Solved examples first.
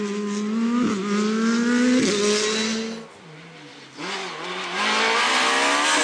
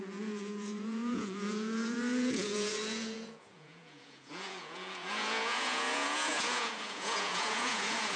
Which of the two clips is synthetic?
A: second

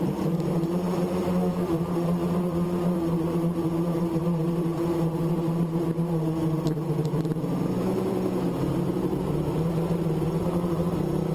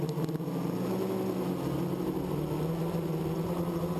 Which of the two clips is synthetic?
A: first